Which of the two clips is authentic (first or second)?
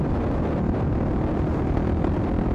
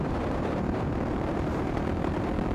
first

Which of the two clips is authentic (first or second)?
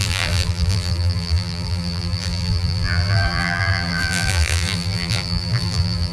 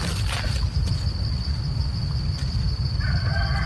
second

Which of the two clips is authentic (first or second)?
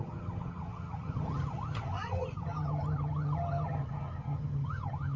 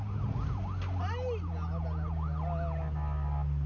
second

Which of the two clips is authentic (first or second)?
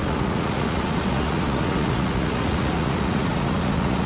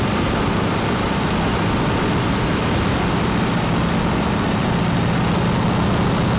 second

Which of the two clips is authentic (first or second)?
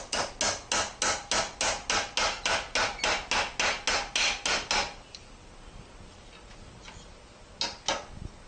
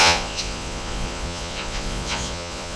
first